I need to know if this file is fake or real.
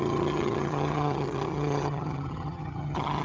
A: fake